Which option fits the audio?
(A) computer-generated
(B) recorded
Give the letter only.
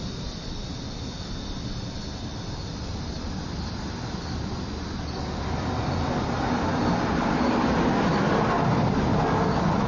B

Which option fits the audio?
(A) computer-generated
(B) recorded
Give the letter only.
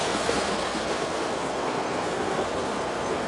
A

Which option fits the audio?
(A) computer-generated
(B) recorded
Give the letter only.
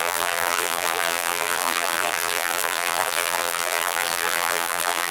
A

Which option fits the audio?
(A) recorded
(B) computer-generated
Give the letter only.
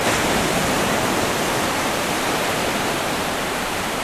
B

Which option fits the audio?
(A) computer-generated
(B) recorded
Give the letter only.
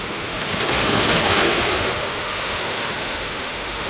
A